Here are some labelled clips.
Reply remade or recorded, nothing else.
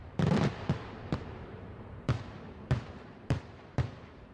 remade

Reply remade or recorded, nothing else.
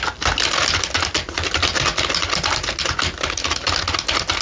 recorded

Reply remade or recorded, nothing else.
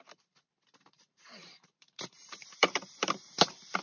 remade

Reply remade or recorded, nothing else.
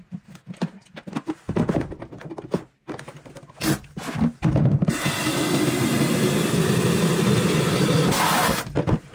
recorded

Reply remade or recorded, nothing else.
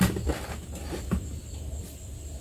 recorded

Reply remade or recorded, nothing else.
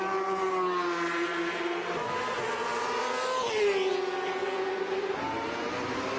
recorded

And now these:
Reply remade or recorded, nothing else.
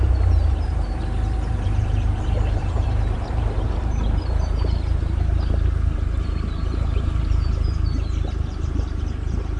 remade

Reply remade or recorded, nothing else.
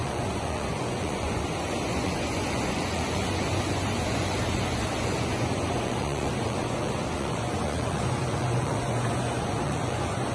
remade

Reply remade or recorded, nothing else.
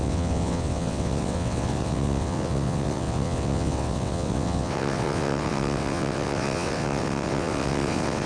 remade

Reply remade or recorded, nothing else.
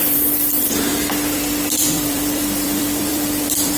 remade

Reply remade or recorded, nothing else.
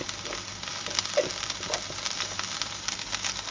recorded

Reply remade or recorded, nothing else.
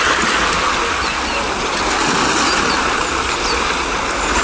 recorded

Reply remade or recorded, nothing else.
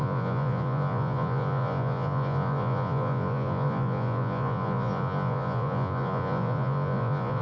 remade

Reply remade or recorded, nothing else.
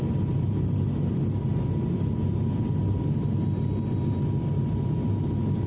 recorded